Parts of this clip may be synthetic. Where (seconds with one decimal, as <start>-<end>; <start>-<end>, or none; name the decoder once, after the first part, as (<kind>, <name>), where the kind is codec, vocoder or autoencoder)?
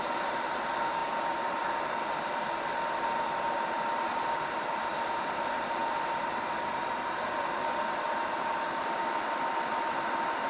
none